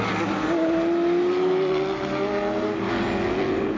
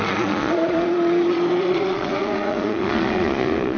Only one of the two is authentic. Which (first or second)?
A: first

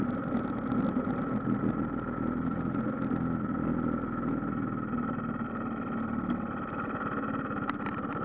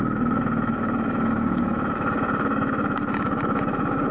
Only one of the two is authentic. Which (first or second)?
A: first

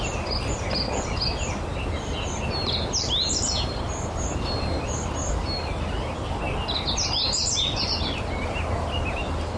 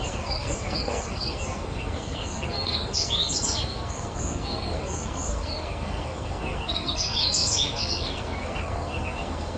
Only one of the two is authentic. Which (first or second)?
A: first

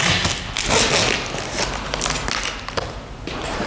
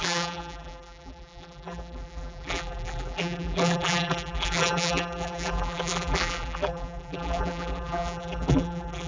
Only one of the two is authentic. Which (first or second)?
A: first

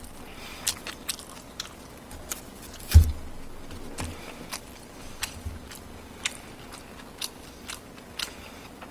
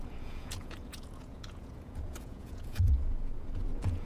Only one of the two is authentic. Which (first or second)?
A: first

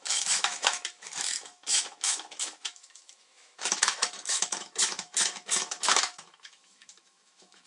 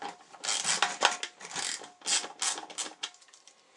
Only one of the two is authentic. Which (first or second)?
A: second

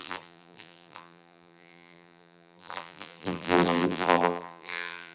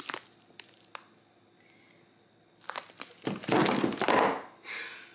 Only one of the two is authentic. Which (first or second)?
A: second